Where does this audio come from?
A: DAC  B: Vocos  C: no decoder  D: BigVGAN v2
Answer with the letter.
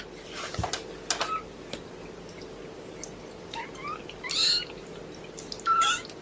C